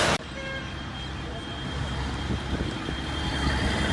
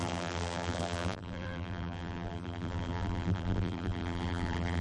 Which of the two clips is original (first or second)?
first